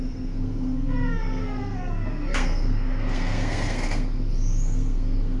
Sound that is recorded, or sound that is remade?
remade